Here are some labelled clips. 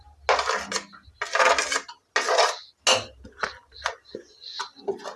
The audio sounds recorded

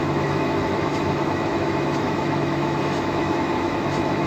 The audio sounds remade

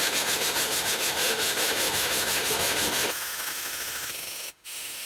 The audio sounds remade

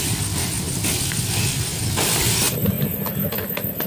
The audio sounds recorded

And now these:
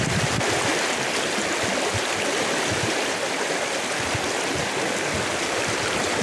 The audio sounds recorded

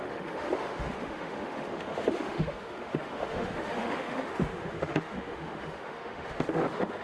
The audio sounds remade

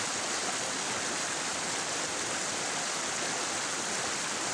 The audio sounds recorded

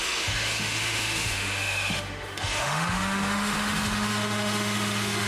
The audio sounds remade